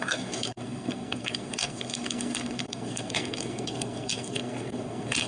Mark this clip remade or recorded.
remade